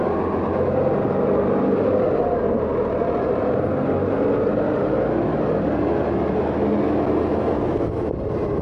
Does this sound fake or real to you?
real